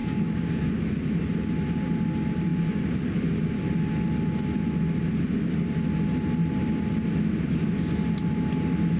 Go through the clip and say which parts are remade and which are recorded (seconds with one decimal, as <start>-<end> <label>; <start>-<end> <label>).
0.0-0.7 remade; 0.7-9.0 recorded